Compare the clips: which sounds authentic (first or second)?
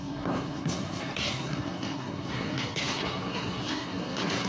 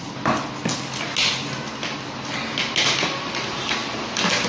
second